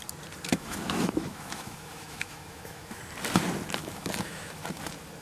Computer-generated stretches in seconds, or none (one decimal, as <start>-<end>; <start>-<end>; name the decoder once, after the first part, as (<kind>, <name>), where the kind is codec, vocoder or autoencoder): 0.5-3.0 (autoencoder, DAC-VAE); 3.8-4.8